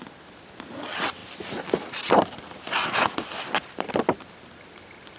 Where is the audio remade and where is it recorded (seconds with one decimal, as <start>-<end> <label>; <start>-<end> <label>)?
0.0-5.2 recorded